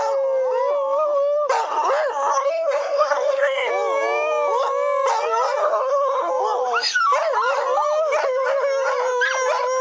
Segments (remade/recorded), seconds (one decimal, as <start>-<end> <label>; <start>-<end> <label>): 0.0-2.3 recorded; 2.3-3.7 remade; 3.7-5.6 recorded; 5.6-6.3 remade; 6.3-9.8 recorded